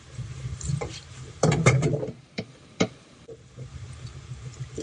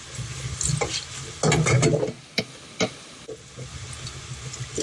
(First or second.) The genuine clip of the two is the second